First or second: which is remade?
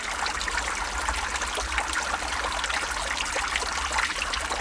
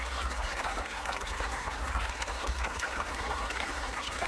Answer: second